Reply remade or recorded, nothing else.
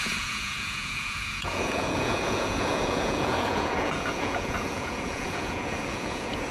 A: remade